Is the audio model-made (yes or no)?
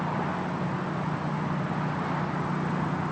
no